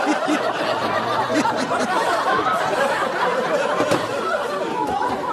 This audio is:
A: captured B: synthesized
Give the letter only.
A